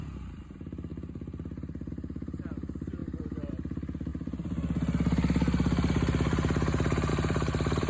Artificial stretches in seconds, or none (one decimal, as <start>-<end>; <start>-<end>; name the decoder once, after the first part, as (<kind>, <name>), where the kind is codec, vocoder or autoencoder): 0.0-4.1 (vocoder, BigVGAN v2); 7.1-7.9